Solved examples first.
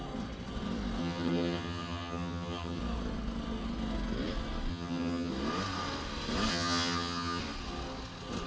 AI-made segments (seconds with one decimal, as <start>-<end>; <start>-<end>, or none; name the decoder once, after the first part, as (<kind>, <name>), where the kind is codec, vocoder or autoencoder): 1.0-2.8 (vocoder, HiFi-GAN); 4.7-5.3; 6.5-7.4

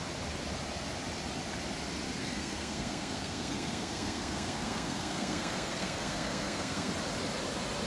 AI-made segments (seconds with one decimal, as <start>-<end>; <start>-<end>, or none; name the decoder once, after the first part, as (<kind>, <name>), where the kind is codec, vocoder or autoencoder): 2.2-6.9 (codec, SNAC)

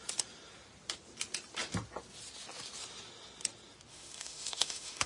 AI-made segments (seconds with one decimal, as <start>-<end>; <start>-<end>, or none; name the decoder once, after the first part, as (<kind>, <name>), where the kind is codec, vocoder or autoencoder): 3.9-5.1 (autoencoder, DAC-VAE)

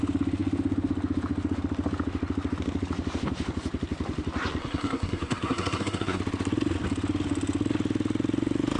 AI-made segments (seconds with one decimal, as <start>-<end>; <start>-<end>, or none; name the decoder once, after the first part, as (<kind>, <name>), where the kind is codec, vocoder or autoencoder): 4.6-6.2 (codec, SNAC)

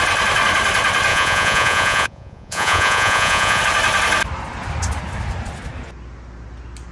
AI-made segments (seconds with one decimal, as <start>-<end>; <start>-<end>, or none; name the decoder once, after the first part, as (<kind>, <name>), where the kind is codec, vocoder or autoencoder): 1.1-3.6 (vocoder, Vocos)

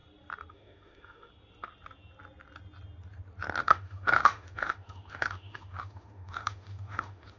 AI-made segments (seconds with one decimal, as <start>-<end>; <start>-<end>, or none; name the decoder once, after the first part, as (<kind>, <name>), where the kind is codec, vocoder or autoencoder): 0.5-1.3 (autoencoder, DAC-VAE); 3.6-7.4

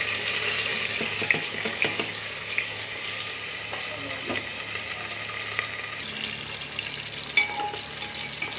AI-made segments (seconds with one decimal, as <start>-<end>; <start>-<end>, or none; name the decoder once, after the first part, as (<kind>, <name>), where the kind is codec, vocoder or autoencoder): 0.7-3.3 (codec, DAC)